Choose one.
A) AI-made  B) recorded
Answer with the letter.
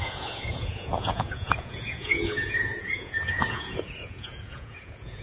A